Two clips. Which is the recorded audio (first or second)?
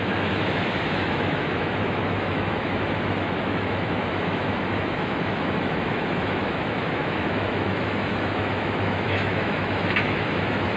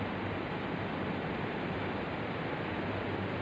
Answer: second